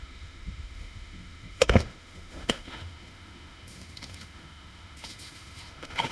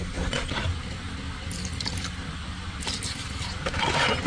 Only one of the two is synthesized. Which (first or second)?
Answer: first